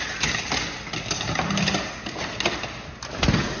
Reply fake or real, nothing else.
real